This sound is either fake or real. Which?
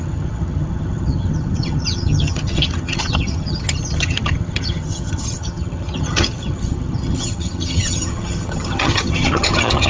fake